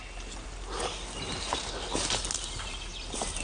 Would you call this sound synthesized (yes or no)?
no